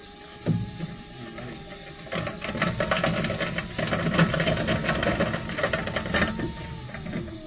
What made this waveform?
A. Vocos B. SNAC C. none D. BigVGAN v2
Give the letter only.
C